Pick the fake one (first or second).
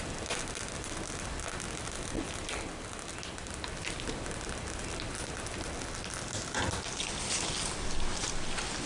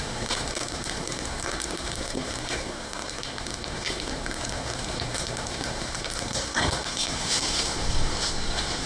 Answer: second